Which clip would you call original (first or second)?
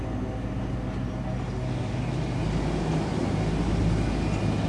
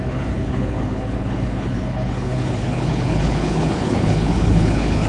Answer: first